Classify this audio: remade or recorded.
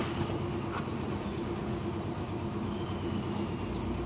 recorded